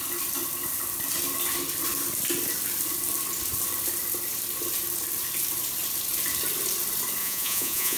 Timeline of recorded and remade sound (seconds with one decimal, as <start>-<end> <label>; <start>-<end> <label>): 0.0-7.2 recorded; 7.2-8.0 remade